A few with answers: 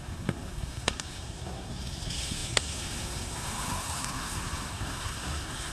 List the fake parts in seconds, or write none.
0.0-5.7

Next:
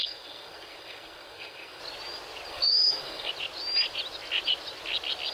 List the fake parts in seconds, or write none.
0.0-1.8; 2.5-3.3

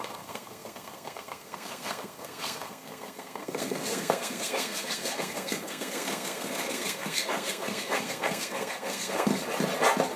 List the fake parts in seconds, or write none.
0.0-9.3

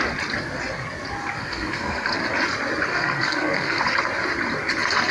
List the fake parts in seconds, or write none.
1.4-2.2; 2.9-3.8

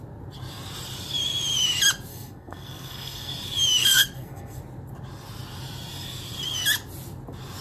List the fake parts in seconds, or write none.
2.1-3.3; 3.8-4.6

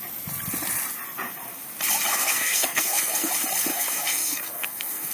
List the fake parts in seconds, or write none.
2.1-3.3; 3.7-5.1

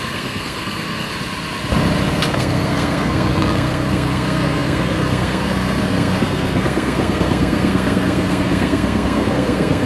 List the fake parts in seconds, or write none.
0.0-1.1; 2.1-9.9

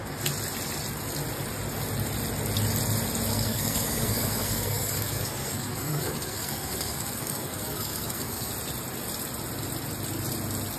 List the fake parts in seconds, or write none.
3.3-8.5